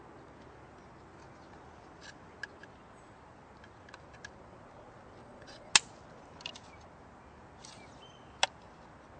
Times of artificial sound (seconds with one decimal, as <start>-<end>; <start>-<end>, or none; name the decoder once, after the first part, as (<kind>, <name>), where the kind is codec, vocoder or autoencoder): 5.2-5.7 (vocoder, Vocos)